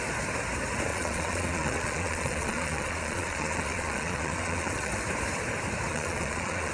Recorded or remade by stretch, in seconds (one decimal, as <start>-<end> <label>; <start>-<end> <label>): 0.0-0.9 recorded; 0.9-4.9 remade; 4.9-5.9 recorded; 5.9-6.7 remade